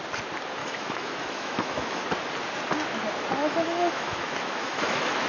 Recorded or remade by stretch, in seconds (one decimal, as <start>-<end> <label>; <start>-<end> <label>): 0.0-0.6 recorded; 0.6-2.0 remade; 2.0-3.4 recorded; 3.4-5.3 remade